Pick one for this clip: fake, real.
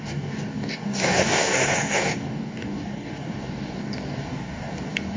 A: fake